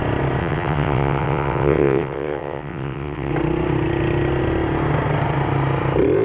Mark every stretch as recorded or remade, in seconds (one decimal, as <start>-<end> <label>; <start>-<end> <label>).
0.0-0.4 recorded; 0.4-3.3 remade; 3.3-6.2 recorded